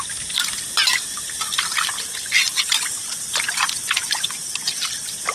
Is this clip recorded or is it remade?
recorded